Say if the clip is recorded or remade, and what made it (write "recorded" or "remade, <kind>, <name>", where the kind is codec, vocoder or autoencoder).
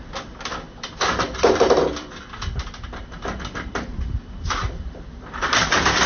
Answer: remade, vocoder, BigVGAN v2